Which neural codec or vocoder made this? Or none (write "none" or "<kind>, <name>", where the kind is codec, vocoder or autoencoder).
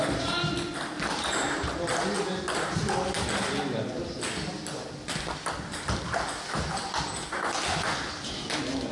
none